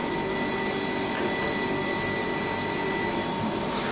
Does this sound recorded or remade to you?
recorded